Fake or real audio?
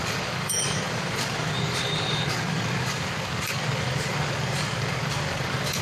fake